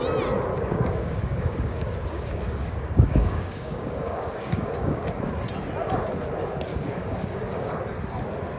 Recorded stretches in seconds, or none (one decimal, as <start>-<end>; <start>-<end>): 0.0-0.5; 5.2-6.7; 7.8-8.6